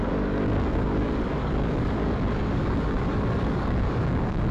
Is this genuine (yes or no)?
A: no